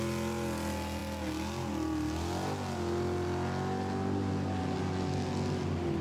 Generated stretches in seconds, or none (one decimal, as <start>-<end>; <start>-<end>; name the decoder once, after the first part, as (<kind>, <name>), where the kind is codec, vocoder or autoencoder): none